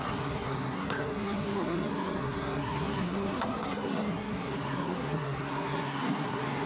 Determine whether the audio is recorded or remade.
remade